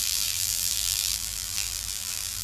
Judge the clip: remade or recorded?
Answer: remade